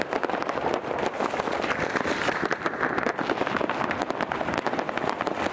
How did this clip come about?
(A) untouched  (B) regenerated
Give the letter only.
A